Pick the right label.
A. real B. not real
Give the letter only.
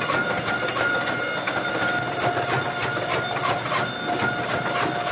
A